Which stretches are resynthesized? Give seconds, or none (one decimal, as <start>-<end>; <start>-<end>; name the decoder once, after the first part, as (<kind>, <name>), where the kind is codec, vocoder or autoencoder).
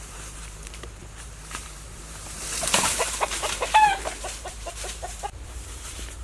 0.0-6.2 (vocoder, BigVGAN v2)